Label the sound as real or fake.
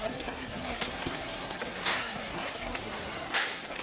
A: fake